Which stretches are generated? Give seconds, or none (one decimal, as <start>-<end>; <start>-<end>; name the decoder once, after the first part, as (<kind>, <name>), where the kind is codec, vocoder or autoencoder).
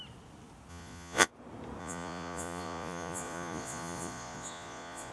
0.7-1.3 (vocoder, Vocos); 1.8-5.1